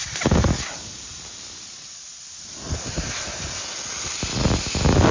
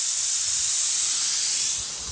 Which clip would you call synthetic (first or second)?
first